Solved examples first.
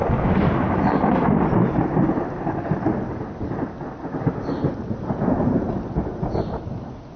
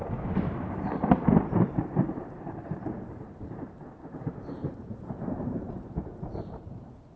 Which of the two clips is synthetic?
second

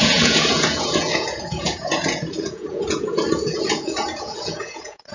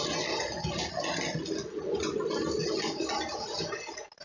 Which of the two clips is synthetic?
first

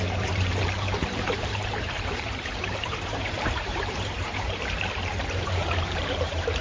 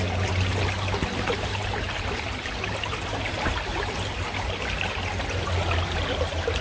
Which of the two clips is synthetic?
first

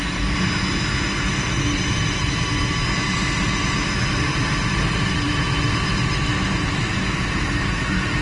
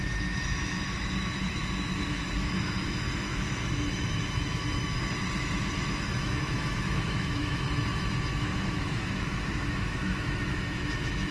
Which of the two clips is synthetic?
second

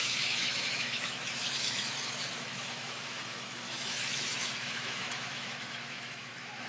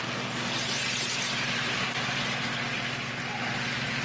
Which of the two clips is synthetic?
first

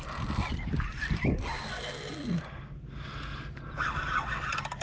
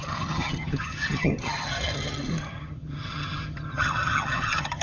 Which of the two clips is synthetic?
second